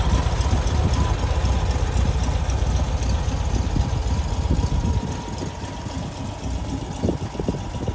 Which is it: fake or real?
real